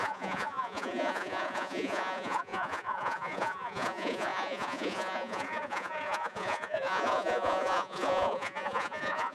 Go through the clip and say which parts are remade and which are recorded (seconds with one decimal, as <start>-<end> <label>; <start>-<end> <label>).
0.0-9.3 remade